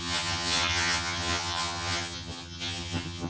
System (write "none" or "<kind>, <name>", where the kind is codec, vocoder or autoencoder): vocoder, HiFi-GAN